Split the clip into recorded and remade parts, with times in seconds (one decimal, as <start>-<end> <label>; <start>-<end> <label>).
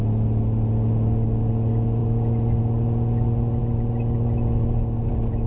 0.0-5.5 recorded